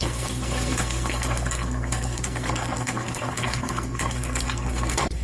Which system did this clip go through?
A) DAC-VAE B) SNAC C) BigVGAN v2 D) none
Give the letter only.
B